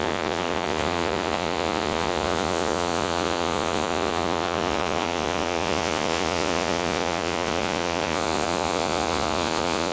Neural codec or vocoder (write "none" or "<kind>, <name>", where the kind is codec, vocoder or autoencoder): vocoder, Vocos